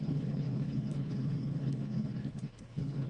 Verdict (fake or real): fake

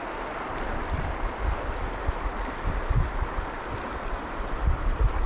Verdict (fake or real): real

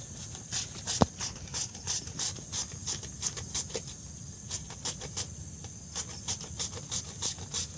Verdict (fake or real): real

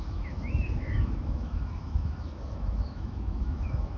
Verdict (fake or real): fake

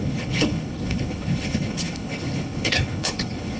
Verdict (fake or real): fake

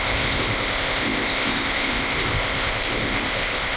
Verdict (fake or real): fake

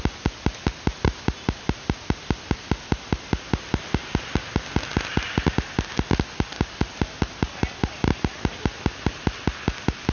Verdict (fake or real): real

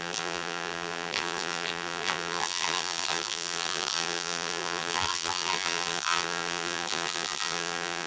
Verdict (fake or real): fake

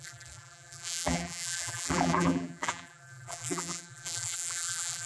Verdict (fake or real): fake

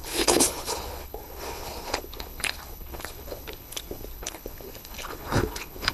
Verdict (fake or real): fake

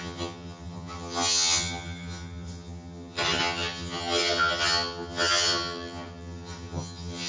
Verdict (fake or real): fake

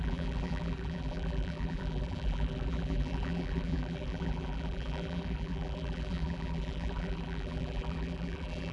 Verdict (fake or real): fake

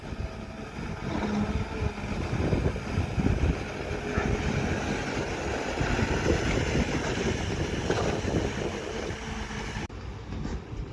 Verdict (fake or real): real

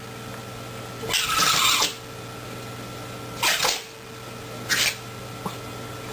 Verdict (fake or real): real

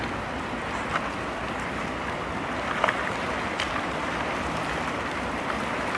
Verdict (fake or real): fake